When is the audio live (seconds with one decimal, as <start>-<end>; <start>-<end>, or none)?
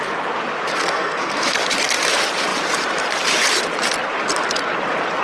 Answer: 0.0-0.8; 1.5-5.2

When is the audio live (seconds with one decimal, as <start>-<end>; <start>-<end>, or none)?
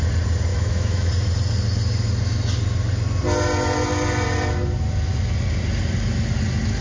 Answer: 0.0-0.5; 1.1-6.8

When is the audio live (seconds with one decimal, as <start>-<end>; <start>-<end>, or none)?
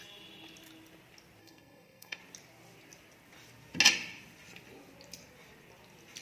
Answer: 0.0-1.4; 2.2-6.2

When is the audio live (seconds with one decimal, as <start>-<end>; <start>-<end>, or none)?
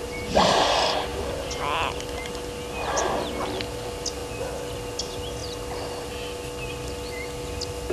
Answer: 0.0-1.1; 2.2-5.4; 6.1-7.9